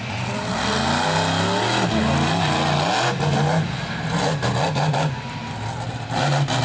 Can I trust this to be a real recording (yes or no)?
yes